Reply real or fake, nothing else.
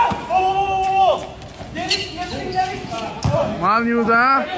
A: real